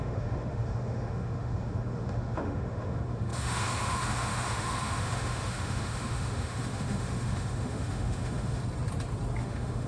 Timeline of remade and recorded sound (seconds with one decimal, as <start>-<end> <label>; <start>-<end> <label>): 0.0-8.6 remade; 8.6-9.4 recorded; 9.4-9.9 remade